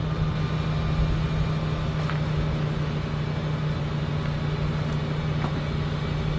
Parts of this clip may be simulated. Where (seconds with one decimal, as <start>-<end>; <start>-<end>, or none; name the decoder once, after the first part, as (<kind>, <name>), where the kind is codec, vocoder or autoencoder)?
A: none